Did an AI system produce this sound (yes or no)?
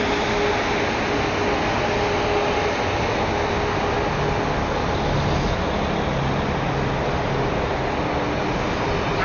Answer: no